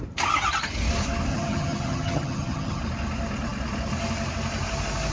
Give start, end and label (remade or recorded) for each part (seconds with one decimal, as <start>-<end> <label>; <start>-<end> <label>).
0.0-1.3 recorded; 1.3-2.8 remade; 2.8-5.1 recorded